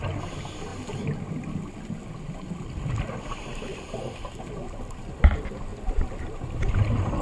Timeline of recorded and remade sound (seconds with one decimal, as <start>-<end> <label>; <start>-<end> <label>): 0.0-7.2 recorded

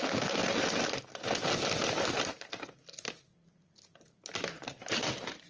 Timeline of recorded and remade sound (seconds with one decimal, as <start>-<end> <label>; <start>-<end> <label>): 0.0-5.5 recorded

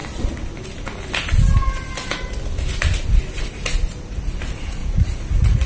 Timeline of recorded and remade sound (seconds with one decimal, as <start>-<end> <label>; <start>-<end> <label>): 0.0-4.8 recorded; 4.8-5.7 remade

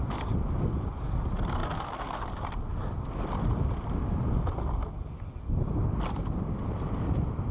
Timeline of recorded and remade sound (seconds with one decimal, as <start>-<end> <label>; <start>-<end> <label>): 0.0-7.5 recorded

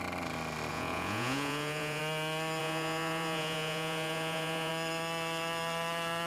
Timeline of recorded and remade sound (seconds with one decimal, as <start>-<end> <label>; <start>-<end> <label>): 0.0-0.7 recorded; 0.7-2.0 remade; 2.0-2.6 recorded; 2.6-4.7 remade; 4.7-6.3 recorded

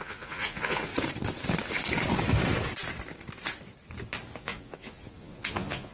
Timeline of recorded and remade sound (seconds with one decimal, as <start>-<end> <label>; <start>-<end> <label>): 0.0-0.9 remade; 0.9-4.4 recorded; 4.4-5.9 remade